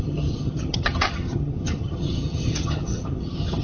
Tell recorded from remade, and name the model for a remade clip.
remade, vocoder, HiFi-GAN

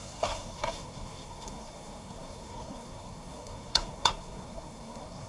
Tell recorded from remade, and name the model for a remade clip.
remade, codec, SNAC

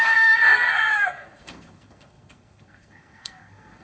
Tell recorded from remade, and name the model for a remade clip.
remade, codec, SNAC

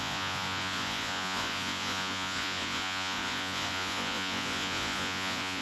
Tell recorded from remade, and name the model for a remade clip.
remade, vocoder, Vocos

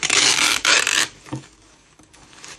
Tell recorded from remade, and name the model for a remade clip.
remade, codec, DAC